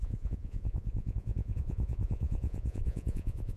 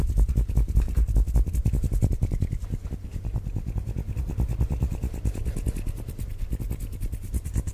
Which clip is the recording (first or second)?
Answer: second